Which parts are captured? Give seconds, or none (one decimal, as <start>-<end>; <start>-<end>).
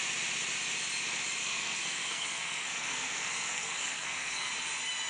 0.0-1.4; 4.5-5.1